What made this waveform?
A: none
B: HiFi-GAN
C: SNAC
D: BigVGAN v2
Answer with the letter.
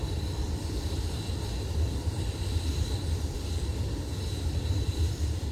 D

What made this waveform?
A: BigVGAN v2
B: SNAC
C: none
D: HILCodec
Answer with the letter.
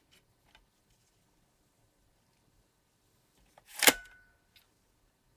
C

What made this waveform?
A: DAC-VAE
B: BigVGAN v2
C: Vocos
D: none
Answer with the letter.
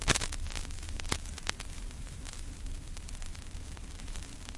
B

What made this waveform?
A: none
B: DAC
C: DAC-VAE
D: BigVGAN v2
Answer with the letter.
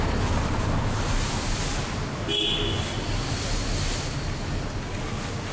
A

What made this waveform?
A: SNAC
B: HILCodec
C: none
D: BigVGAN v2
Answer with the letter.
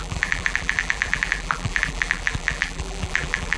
D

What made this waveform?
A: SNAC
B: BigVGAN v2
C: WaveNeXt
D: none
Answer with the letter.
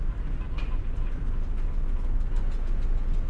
D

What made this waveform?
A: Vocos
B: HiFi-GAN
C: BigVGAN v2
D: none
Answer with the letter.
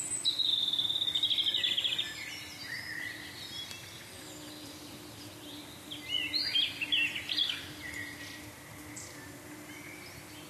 D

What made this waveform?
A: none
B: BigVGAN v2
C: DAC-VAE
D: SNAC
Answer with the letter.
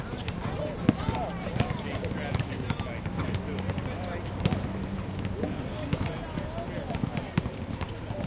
A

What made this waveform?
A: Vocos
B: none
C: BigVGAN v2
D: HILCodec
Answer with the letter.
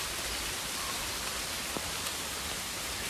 C